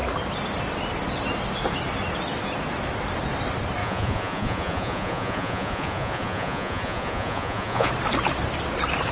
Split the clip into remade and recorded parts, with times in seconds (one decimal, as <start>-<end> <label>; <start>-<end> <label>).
0.0-3.8 recorded; 3.8-7.9 remade; 7.9-9.1 recorded

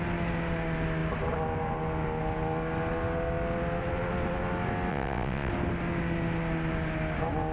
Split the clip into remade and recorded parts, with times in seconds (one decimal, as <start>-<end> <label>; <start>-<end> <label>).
0.0-4.9 recorded; 4.9-5.5 remade; 5.5-7.5 recorded

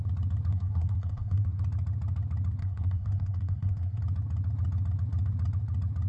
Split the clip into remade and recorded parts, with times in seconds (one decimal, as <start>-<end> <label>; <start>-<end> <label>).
0.0-0.5 recorded; 0.5-1.6 remade; 1.6-2.6 recorded; 2.6-4.0 remade; 4.0-6.1 recorded

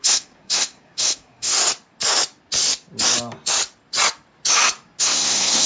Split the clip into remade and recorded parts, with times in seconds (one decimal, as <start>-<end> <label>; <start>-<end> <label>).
0.0-1.6 remade; 1.6-5.0 recorded; 5.0-5.7 remade

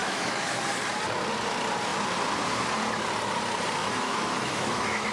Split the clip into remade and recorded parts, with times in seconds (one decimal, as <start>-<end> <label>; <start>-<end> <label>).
0.0-0.6 remade; 0.6-3.8 recorded; 3.8-5.1 remade

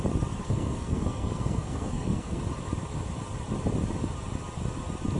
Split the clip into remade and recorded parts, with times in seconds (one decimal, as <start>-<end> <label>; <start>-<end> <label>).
0.0-0.4 recorded; 0.4-2.4 remade; 2.4-5.2 recorded

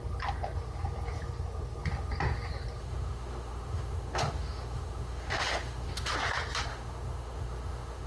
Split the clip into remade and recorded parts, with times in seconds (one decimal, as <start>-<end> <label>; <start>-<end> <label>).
0.0-2.8 recorded; 2.8-6.1 remade; 6.1-6.7 recorded; 6.7-8.1 remade

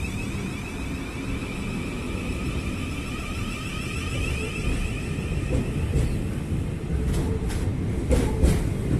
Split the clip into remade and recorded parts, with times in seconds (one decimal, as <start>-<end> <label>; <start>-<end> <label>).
0.0-9.0 recorded